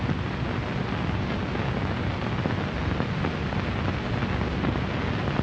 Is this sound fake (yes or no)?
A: no